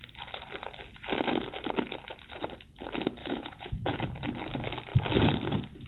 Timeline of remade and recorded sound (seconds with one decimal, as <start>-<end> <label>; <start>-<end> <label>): 0.0-3.2 recorded; 3.2-4.0 remade; 4.0-5.9 recorded